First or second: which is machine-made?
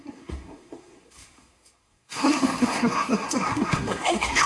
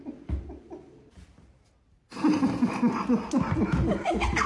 first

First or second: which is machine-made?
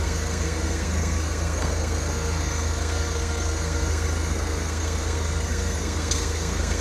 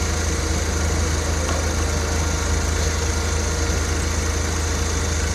first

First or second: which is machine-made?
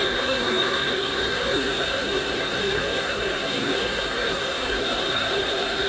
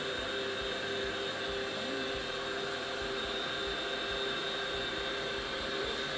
first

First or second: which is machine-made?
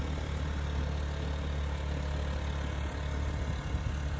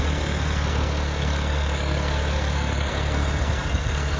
second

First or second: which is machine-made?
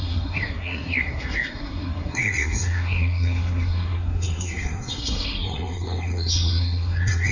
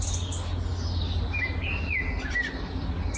first